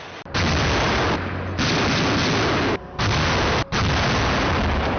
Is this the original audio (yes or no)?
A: yes